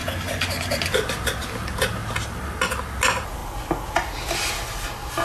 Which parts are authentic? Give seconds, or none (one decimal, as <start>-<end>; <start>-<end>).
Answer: 0.0-5.2